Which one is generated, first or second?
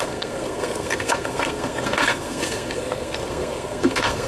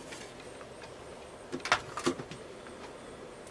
first